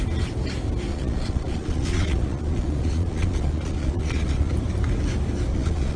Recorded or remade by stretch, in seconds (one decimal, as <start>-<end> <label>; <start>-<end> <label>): 0.0-0.9 recorded; 0.9-4.5 remade; 4.5-5.5 recorded; 5.5-6.0 remade